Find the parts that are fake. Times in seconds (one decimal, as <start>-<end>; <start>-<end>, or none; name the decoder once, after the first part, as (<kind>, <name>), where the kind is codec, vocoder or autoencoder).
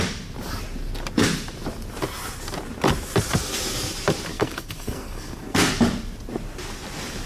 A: 4.3-5.7 (codec, SNAC)